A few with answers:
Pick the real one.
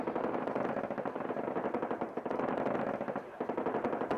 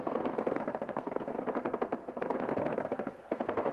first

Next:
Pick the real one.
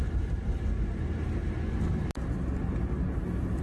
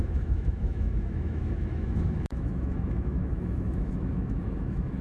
first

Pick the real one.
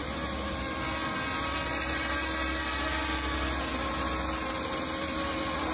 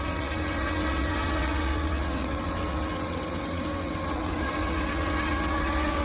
first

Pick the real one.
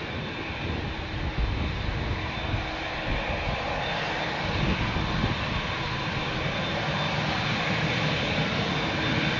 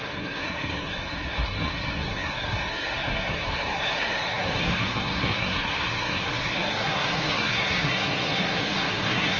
first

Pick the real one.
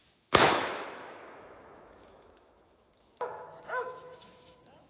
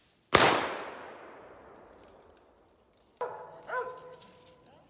second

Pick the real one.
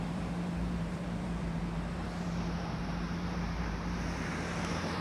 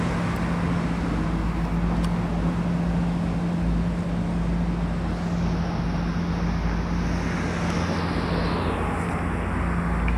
second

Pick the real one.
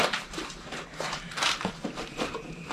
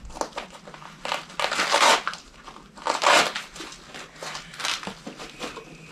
second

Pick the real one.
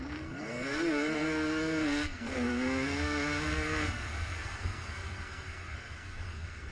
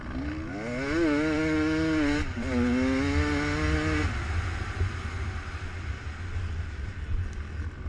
second